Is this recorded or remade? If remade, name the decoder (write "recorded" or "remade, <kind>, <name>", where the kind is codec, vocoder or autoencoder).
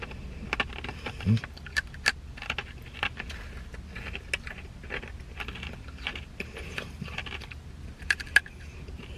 recorded